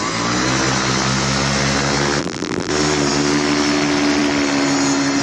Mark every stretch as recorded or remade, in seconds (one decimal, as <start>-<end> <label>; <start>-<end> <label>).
0.0-2.2 recorded; 2.2-2.7 remade; 2.7-5.2 recorded